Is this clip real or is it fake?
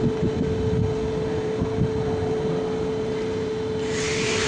real